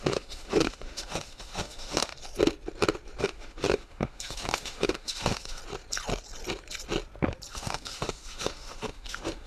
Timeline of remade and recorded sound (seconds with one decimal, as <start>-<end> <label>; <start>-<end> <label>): 0.0-2.1 remade; 2.1-3.2 recorded; 3.2-5.6 remade; 5.6-7.5 recorded; 7.5-9.5 remade